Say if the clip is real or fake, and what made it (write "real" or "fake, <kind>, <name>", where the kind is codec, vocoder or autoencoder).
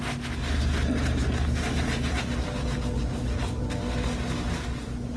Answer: real